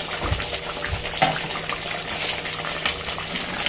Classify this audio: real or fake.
real